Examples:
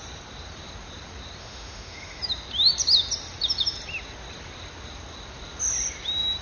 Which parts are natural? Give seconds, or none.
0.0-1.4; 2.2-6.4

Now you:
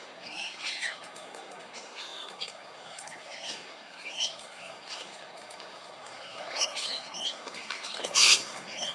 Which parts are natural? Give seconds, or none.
none